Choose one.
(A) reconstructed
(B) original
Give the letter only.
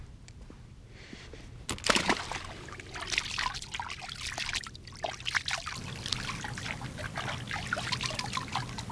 B